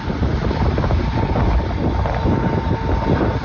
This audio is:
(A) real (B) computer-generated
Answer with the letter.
A